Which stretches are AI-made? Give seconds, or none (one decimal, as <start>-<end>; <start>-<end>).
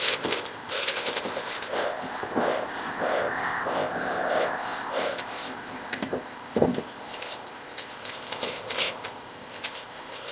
0.0-10.3